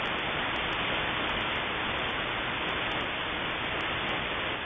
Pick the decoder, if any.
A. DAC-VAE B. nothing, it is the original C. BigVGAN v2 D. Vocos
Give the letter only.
B